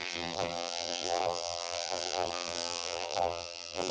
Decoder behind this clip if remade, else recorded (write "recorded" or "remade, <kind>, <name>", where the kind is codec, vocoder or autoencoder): remade, vocoder, BigVGAN v2